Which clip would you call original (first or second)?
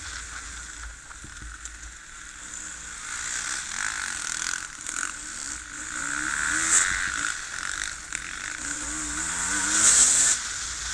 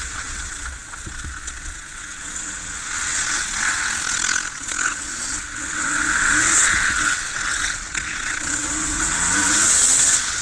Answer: first